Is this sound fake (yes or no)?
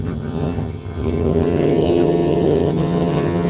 yes